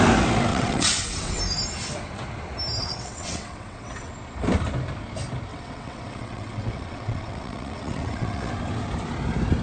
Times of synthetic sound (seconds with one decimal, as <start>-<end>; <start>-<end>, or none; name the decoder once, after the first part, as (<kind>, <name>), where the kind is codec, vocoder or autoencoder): 0.5-1.4 (vocoder, WaveNeXt); 2.8-4.1; 5.5-8.5